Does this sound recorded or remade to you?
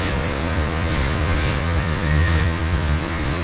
remade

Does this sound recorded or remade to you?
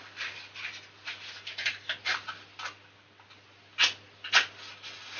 recorded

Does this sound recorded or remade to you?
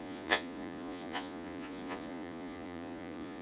remade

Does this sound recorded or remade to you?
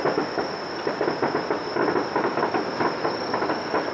recorded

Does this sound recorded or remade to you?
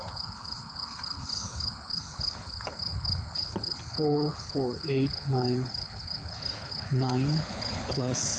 remade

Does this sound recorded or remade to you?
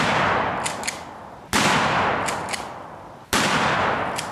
recorded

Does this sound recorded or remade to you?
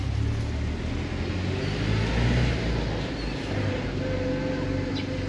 recorded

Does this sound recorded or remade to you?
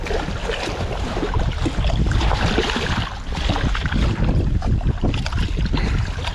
recorded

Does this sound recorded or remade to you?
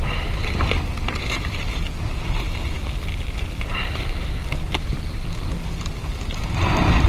remade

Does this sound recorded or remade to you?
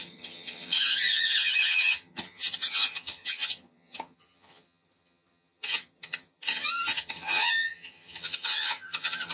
remade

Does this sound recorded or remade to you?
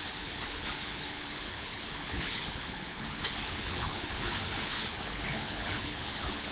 remade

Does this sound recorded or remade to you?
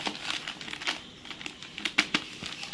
recorded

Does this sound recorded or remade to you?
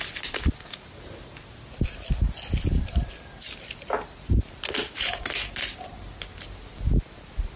recorded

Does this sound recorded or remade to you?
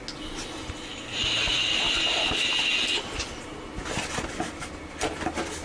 recorded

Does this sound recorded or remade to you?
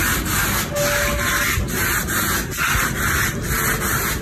recorded